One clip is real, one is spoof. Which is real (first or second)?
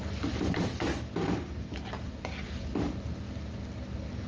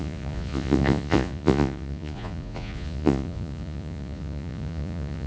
first